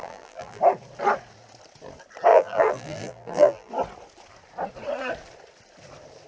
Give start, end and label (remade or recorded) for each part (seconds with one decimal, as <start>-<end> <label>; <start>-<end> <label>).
0.0-0.6 remade; 0.6-2.3 recorded; 2.3-3.7 remade; 3.7-6.3 recorded